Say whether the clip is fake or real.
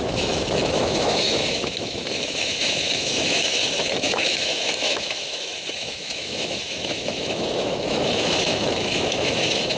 fake